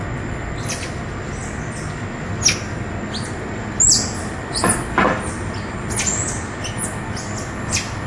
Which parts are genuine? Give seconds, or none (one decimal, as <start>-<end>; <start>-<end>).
0.0-8.1